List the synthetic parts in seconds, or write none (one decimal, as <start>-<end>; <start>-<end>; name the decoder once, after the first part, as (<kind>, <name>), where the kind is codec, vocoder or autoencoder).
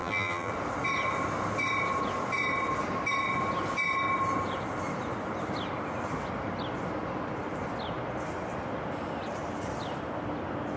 0.0-0.5 (vocoder, BigVGAN v2)